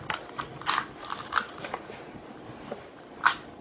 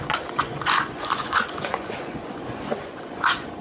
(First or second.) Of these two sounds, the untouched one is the first